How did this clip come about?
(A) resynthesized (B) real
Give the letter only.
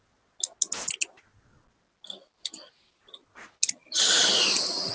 B